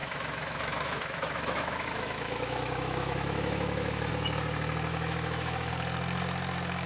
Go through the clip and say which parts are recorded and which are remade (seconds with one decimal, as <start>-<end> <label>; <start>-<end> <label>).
0.0-4.1 remade; 4.1-4.9 recorded; 4.9-5.7 remade; 5.7-6.9 recorded